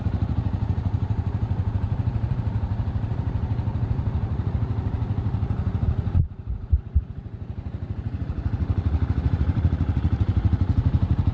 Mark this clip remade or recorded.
remade